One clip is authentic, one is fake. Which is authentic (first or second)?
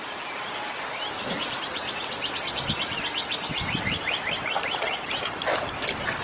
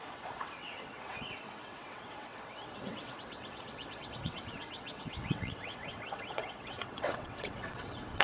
first